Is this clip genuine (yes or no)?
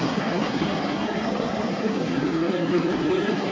no